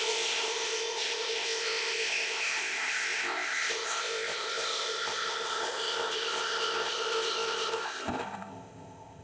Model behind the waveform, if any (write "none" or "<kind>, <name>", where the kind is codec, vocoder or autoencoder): codec, ZipCodec